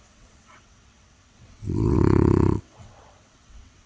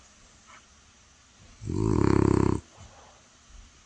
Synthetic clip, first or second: first